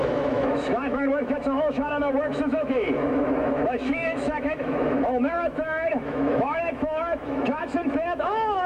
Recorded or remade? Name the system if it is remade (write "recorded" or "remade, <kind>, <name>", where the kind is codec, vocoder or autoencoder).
remade, autoencoder, DAC-VAE